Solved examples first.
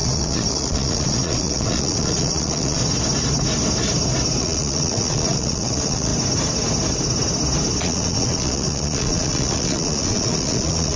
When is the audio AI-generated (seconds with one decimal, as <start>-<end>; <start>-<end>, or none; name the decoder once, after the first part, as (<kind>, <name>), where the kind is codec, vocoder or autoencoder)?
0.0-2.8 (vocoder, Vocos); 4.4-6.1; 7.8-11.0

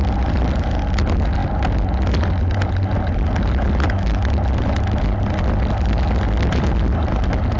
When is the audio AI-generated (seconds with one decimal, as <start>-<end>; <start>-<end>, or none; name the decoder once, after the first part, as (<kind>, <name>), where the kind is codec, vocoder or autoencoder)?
none

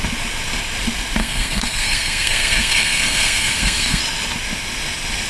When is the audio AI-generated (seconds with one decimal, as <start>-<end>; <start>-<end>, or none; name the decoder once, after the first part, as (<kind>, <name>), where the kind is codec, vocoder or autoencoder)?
1.2-4.0 (codec, SNAC)

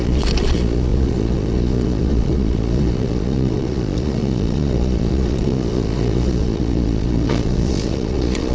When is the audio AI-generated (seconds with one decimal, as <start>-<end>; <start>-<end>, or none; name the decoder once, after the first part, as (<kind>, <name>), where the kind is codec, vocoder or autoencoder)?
0.0-8.5 (vocoder, Vocos)

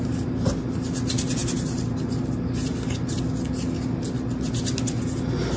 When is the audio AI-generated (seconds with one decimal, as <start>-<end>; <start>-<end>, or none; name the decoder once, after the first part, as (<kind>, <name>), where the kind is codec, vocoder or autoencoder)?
none